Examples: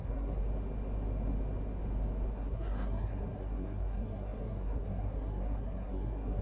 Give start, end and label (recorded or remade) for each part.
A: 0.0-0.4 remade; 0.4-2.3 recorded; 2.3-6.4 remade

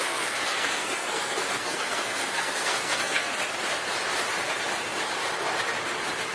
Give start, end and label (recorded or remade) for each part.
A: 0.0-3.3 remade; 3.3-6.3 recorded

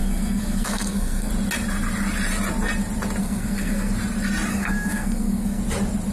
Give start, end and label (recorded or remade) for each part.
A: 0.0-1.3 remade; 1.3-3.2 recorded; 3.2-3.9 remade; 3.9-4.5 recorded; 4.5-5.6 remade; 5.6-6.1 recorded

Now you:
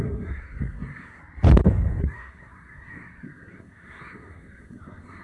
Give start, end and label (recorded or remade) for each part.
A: 0.0-1.2 remade; 1.2-2.0 recorded; 2.0-5.2 remade

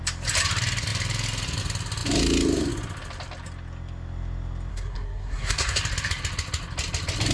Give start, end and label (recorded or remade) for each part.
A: 0.0-4.7 recorded; 4.7-5.8 remade; 5.8-7.3 recorded

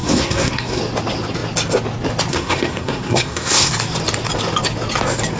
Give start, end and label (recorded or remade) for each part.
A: 0.0-0.8 remade; 0.8-2.3 recorded; 2.3-3.7 remade; 3.7-5.4 recorded

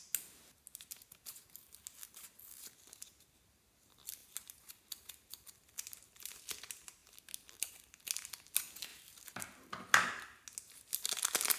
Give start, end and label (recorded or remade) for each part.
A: 0.0-11.6 recorded

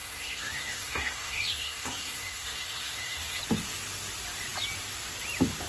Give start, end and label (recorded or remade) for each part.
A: 0.0-3.4 remade; 3.4-5.7 recorded